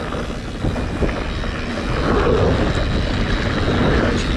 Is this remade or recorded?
recorded